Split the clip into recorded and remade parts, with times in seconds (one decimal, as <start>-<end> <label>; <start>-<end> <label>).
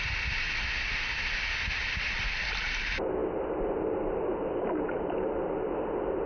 0.0-6.3 recorded